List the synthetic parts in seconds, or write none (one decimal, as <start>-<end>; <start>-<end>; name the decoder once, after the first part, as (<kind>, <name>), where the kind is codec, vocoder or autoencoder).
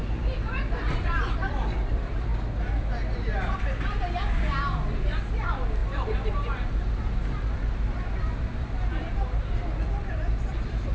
0.0-2.3 (vocoder, BigVGAN v2); 5.3-5.8; 6.9-10.9